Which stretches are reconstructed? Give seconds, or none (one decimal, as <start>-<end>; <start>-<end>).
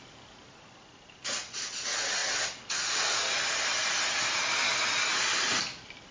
none